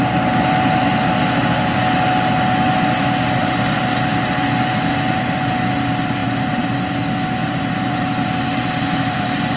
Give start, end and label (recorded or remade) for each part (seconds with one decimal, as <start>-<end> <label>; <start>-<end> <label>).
0.0-6.2 recorded; 6.2-6.7 remade; 6.7-7.4 recorded; 7.4-9.6 remade